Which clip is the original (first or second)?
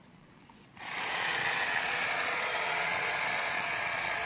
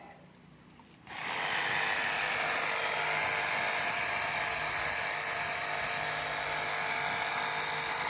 second